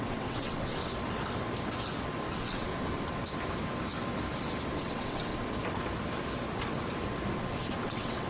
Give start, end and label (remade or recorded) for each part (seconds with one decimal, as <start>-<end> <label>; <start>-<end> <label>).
0.0-0.8 remade; 0.8-2.3 recorded; 2.3-2.7 remade; 2.7-4.8 recorded; 4.8-5.3 remade; 5.3-7.8 recorded; 7.8-8.3 remade